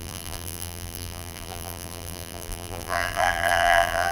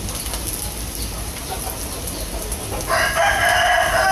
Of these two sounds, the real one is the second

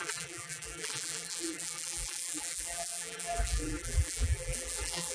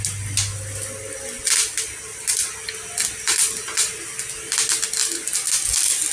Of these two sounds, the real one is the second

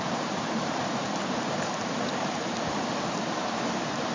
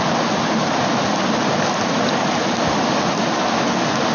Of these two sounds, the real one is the second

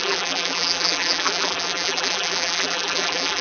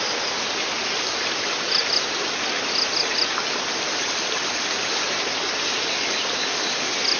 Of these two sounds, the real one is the second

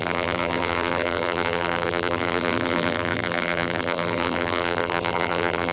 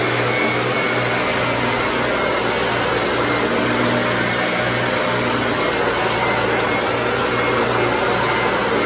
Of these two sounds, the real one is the second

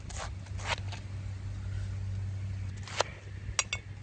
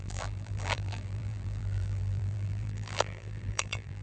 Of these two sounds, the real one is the first